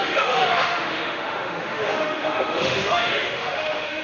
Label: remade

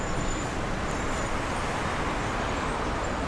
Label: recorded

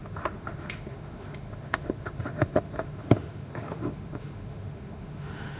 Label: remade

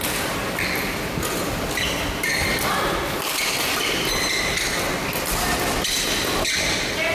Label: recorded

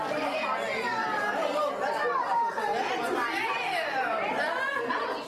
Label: recorded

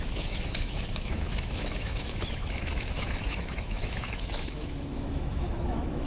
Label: remade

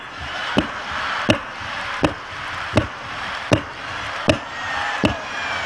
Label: recorded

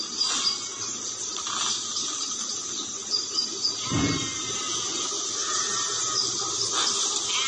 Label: recorded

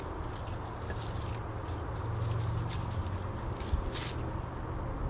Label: recorded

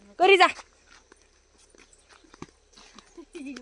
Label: recorded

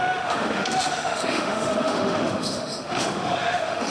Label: remade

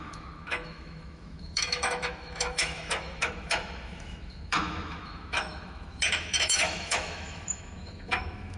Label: remade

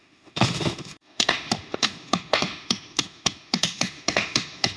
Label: remade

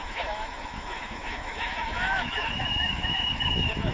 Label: remade